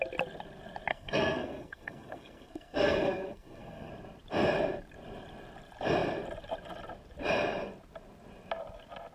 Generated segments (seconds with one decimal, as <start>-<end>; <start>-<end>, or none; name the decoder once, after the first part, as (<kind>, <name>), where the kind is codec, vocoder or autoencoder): 0.9-3.9 (codec, SNAC)